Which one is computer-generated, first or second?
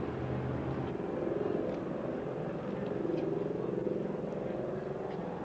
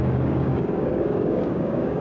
second